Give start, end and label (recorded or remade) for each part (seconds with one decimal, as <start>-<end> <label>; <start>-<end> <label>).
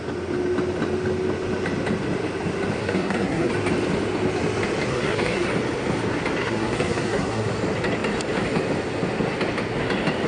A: 0.0-2.8 recorded; 2.8-3.5 remade; 3.5-4.9 recorded; 4.9-5.5 remade; 5.5-6.4 recorded; 6.4-7.5 remade; 7.5-10.3 recorded